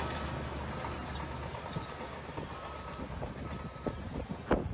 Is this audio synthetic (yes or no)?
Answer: no